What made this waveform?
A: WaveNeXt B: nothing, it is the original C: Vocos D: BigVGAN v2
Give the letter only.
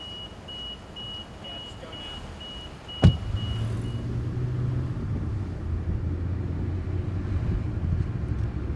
B